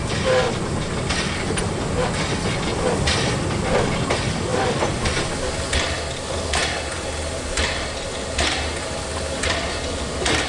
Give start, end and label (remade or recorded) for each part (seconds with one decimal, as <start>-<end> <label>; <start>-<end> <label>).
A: 0.0-10.5 recorded